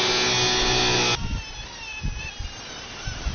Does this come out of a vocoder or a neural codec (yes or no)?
no